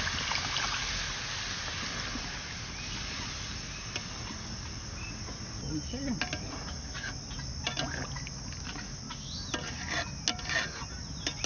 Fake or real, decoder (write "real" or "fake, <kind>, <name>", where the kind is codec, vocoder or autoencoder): real